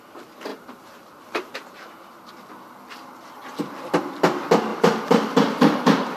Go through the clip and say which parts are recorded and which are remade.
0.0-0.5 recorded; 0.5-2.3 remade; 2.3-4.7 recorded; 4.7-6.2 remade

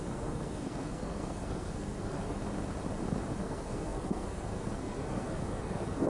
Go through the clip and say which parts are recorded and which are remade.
0.0-2.4 remade; 2.4-3.4 recorded; 3.4-6.1 remade

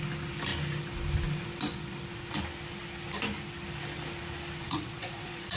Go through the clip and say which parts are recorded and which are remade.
0.0-4.6 recorded; 4.6-5.6 remade

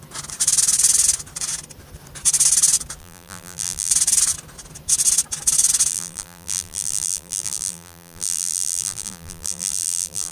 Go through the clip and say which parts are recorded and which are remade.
0.0-3.0 recorded; 3.0-3.9 remade; 3.9-5.9 recorded; 5.9-10.3 remade

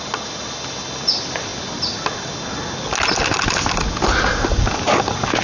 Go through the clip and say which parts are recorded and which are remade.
0.0-5.4 recorded

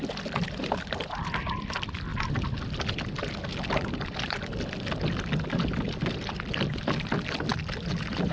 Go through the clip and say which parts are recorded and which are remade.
0.0-2.1 remade; 2.1-6.5 recorded; 6.5-7.5 remade; 7.5-8.3 recorded

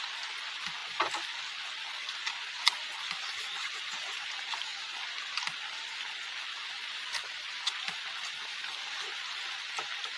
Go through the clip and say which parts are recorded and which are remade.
0.0-0.8 recorded; 0.8-3.8 remade; 3.8-10.2 recorded